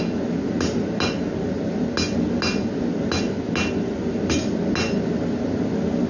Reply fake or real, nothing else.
real